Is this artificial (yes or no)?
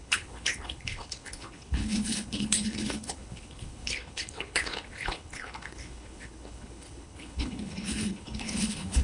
yes